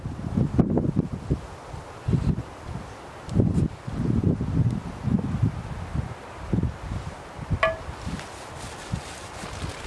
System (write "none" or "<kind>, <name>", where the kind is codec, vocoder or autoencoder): none